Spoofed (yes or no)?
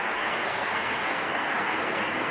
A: yes